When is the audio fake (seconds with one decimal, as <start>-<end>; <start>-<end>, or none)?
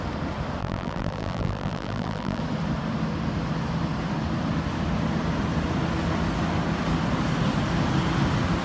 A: 0.6-2.4